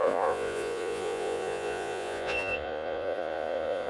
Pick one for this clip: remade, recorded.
remade